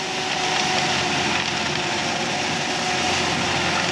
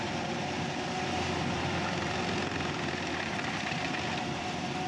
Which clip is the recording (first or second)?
first